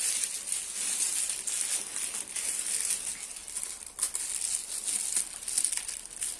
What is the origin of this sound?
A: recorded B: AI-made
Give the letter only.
A